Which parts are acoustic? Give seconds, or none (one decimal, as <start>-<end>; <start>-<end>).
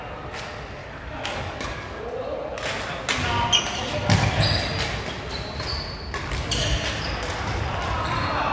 0.0-0.8; 2.0-8.5